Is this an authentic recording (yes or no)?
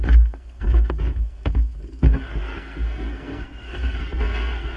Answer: no